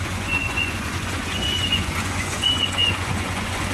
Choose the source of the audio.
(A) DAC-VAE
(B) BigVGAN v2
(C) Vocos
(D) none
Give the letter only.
C